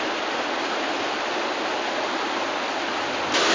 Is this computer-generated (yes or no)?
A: no